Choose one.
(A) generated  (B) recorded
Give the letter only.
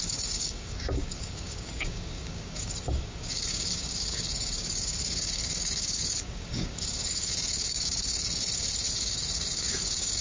A